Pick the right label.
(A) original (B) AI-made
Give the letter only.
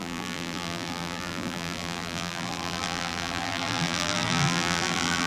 B